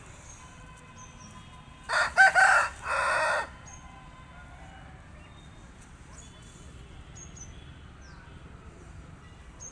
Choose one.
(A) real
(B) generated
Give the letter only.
A